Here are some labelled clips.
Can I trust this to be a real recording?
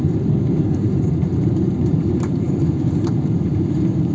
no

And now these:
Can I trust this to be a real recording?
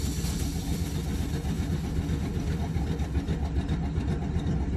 yes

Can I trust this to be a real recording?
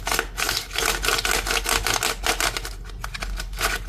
yes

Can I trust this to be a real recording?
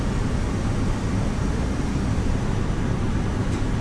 yes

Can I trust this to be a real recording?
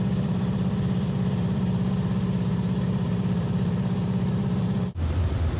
no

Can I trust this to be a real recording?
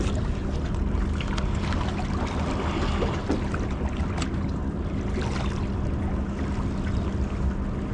yes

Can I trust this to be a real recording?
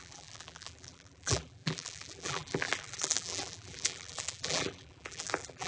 no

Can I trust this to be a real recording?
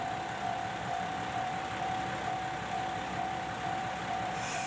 no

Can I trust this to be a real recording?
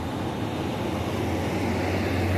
yes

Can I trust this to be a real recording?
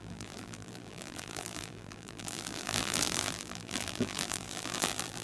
no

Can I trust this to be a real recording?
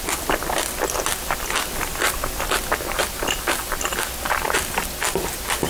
yes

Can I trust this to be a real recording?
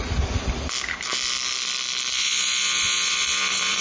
no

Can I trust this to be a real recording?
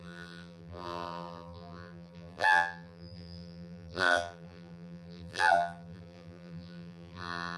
no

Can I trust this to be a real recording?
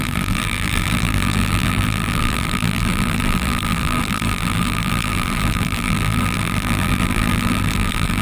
no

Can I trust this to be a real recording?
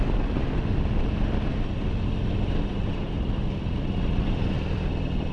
yes